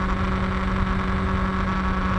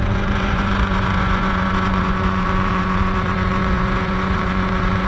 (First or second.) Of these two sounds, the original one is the first